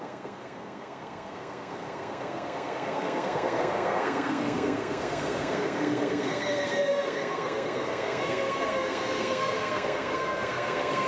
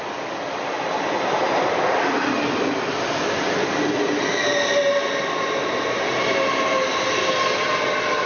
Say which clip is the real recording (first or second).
second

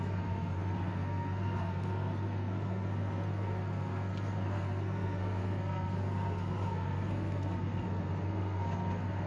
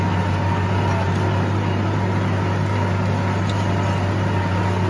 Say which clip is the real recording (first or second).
second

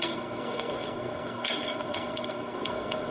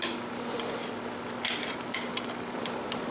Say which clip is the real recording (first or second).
second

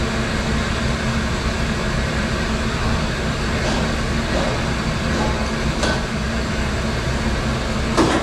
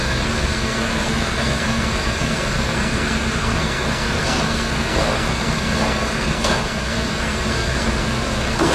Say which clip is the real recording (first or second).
first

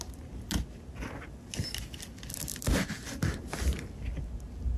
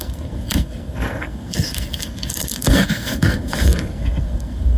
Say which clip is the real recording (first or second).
first